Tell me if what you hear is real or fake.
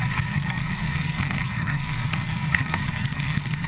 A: fake